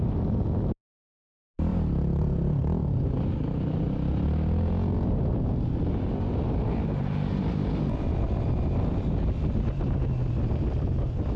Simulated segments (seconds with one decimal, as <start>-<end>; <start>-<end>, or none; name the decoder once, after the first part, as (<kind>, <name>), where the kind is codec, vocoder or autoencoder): 1.7-2.2 (vocoder, BigVGAN v2); 5.8-7.1

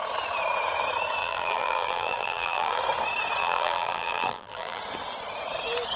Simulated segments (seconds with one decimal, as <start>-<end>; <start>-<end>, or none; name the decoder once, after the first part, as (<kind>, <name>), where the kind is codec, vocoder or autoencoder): 1.2-2.8 (vocoder, BigVGAN v2); 3.4-4.8